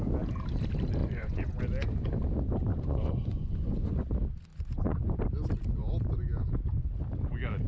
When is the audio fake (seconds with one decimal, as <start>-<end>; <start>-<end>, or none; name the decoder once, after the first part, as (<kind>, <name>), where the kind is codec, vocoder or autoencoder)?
1.0-1.6 (vocoder, Vocos); 2.7-4.0; 4.5-5.2